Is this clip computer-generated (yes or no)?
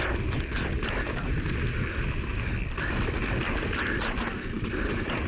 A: no